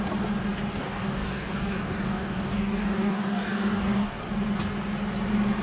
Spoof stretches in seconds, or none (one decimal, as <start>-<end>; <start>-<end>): 0.8-4.2